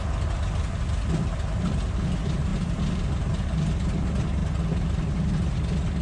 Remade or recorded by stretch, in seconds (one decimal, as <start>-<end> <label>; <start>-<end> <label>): 0.0-6.0 recorded